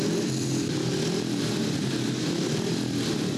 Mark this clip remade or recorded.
remade